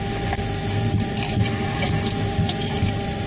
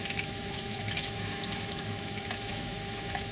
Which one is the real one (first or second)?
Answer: first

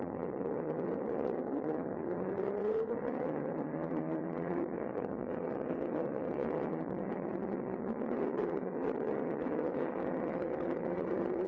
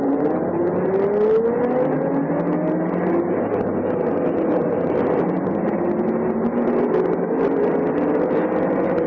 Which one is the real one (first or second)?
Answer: second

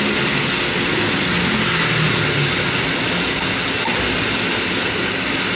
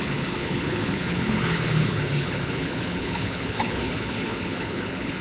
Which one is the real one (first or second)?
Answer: first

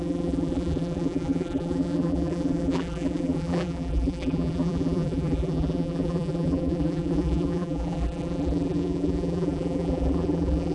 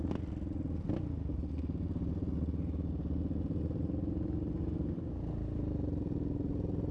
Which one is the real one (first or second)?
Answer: second